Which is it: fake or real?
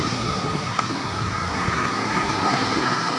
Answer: fake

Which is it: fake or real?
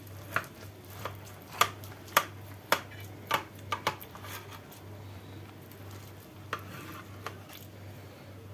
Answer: real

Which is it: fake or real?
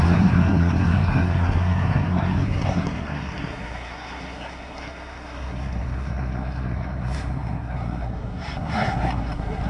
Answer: fake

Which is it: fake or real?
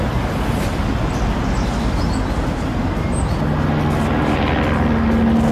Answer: real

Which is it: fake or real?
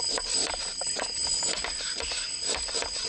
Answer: real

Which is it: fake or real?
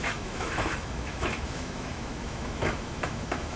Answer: fake